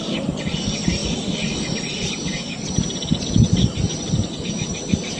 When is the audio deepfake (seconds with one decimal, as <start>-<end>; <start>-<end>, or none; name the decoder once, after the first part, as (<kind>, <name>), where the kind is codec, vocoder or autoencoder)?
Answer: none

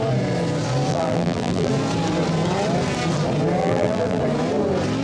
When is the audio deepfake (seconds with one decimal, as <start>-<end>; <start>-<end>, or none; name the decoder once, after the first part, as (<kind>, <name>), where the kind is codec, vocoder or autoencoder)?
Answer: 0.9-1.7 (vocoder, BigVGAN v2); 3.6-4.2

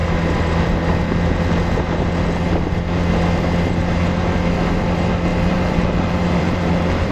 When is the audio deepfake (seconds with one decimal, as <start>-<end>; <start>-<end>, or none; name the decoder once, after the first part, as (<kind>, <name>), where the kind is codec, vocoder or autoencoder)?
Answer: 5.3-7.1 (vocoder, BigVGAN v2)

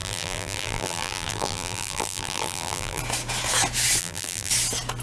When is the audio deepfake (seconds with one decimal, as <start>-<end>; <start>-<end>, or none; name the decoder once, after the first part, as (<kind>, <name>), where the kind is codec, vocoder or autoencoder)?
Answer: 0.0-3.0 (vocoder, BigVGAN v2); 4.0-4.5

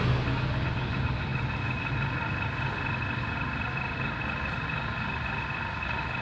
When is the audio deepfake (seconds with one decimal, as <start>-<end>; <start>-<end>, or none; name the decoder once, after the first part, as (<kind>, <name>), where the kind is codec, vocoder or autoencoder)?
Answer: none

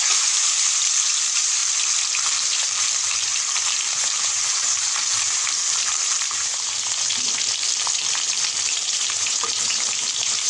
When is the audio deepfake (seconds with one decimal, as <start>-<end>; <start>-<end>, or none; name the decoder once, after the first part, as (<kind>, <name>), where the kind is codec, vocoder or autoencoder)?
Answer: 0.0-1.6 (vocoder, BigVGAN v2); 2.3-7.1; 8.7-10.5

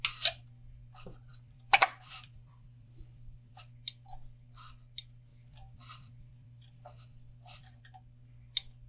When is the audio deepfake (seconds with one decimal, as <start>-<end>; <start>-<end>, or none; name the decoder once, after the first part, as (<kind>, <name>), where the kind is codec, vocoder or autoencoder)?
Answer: 1.3-3.6 (vocoder, BigVGAN v2); 5.3-7.8

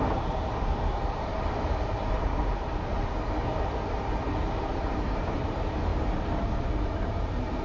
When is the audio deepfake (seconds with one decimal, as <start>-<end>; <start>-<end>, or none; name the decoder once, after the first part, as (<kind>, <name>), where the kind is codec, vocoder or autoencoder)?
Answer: 0.0-1.3 (vocoder, BigVGAN v2); 2.1-2.9; 4.7-5.9; 6.4-7.6